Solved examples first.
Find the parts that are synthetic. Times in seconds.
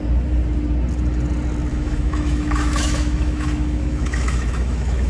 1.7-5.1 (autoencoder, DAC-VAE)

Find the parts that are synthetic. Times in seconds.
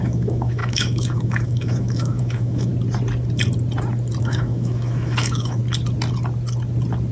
0.0-2.7 (autoencoder, DAC-VAE); 4.2-5.6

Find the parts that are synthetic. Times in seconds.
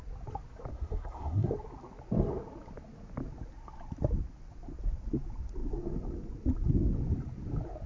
0.7-1.5 (codec, SNAC)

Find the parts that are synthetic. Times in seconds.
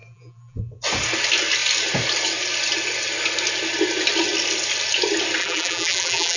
0.0-0.6 (vocoder, BigVGAN v2); 5.4-6.4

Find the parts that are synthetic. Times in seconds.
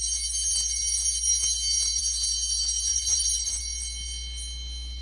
2.9-3.6 (vocoder, Vocos)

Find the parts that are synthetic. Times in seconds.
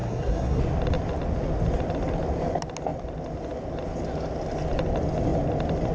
0.0-0.6 (codec, SNAC)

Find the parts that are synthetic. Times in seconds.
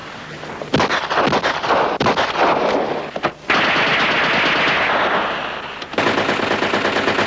none